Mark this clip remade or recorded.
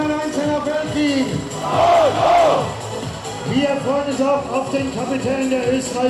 recorded